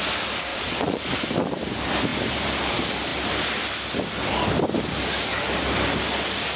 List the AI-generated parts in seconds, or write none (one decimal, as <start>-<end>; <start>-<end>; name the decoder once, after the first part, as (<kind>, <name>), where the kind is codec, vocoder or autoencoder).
0.5-1.1 (vocoder, Vocos)